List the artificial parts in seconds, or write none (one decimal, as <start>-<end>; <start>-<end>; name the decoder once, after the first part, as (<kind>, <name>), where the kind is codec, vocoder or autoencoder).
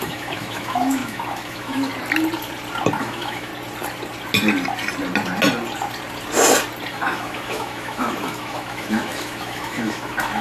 0.0-1.9 (autoencoder, DAC-VAE); 3.0-3.5; 6.9-10.4